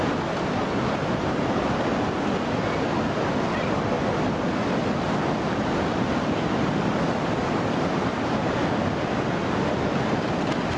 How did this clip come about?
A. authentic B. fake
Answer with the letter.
A